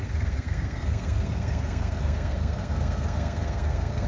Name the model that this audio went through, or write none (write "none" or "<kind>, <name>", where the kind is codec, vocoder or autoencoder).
codec, SNAC